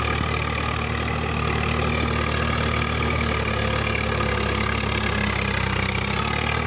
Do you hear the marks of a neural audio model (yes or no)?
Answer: no